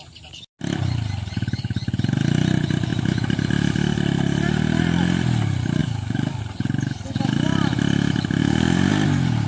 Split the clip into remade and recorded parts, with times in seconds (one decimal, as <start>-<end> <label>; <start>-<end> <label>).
0.0-5.8 recorded; 5.8-6.4 remade; 6.4-8.4 recorded; 8.4-8.9 remade; 8.9-9.5 recorded